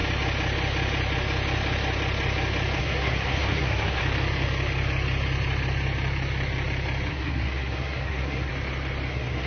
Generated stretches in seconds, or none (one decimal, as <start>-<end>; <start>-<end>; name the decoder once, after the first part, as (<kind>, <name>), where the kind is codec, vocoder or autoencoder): 2.8-4.0 (codec, SNAC); 7.1-8.5; 9.1-9.5